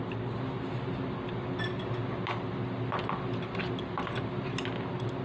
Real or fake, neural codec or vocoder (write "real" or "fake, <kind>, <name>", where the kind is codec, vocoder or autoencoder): real